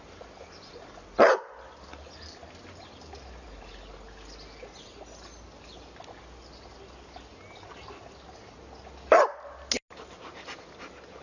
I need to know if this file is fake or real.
real